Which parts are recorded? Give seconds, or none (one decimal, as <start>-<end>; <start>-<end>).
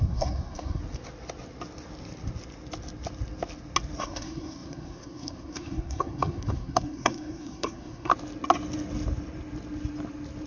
0.8-4.0; 8.1-10.5